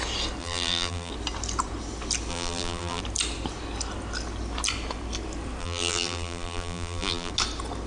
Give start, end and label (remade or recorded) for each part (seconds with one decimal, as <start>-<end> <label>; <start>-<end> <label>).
0.0-0.4 recorded; 0.4-1.1 remade; 1.1-2.3 recorded; 2.3-3.0 remade; 3.0-5.6 recorded; 5.6-7.3 remade; 7.3-7.9 recorded